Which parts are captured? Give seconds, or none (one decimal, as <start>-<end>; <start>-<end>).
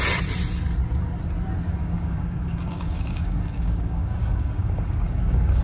0.0-1.8